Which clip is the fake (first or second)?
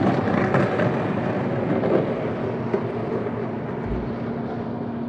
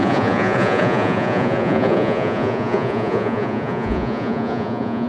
second